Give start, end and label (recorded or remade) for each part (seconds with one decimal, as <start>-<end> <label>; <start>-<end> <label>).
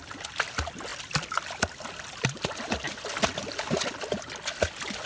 0.0-5.1 recorded